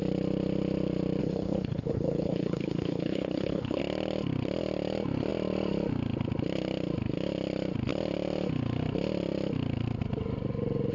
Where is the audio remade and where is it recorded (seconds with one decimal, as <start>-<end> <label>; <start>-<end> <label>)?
0.0-1.2 recorded; 1.2-3.8 remade; 3.8-10.9 recorded